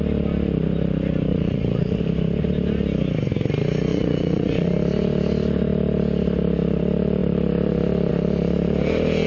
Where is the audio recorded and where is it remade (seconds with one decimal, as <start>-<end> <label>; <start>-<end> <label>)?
0.0-1.3 recorded; 1.3-2.0 remade; 2.0-3.9 recorded; 3.9-4.7 remade; 4.7-9.3 recorded